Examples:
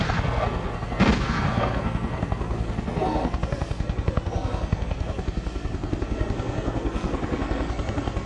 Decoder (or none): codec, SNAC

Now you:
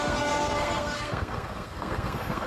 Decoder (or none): codec, SNAC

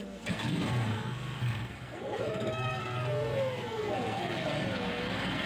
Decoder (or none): codec, SNAC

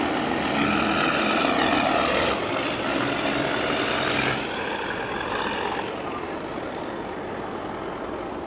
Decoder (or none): none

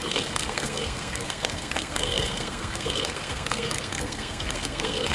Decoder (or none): codec, SNAC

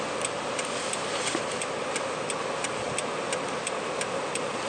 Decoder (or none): none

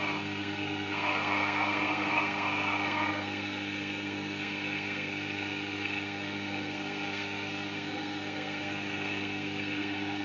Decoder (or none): codec, SNAC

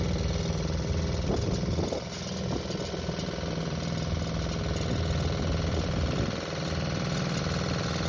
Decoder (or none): none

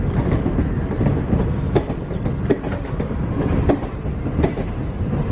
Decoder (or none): none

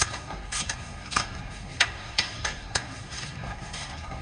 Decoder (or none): codec, SNAC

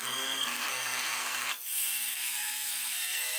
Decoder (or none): codec, SNAC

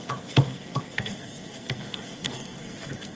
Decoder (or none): codec, SNAC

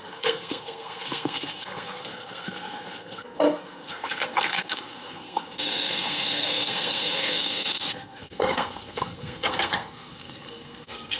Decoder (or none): codec, SNAC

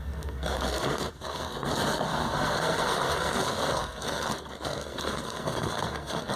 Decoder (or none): codec, SNAC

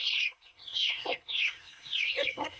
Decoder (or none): codec, SNAC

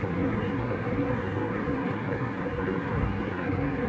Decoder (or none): codec, SNAC